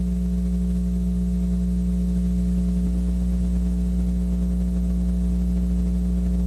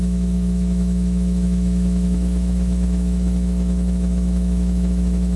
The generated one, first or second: second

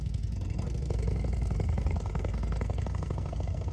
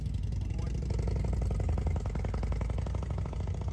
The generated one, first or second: first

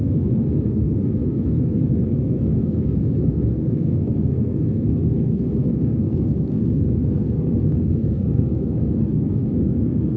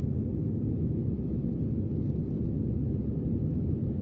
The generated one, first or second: first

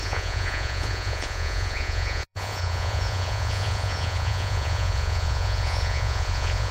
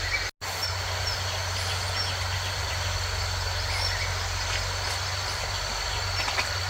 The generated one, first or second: first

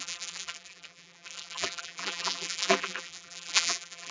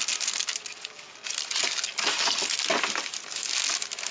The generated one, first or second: first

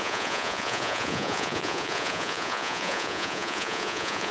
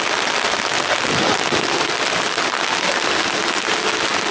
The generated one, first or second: first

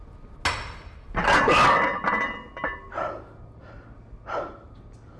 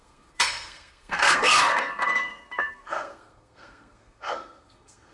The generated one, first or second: second